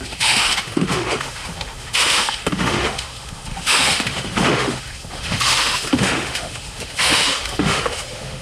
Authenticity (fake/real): fake